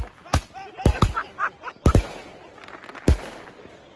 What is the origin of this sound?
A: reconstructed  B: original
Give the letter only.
B